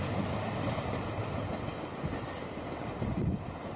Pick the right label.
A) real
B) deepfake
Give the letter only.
A